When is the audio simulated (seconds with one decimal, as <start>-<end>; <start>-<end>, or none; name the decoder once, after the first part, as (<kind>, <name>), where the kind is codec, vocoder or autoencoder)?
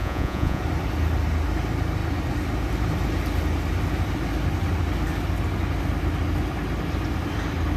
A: 0.0-0.6 (vocoder, Vocos)